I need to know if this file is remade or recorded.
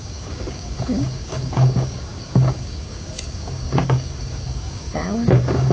remade